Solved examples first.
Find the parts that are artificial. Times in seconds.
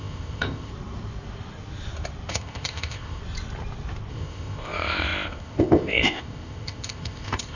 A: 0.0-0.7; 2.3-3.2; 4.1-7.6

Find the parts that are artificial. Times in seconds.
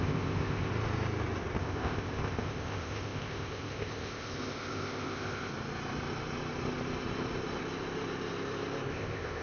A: 0.0-0.7; 1.6-5.5; 8.9-9.4